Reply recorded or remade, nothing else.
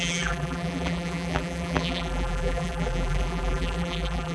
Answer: remade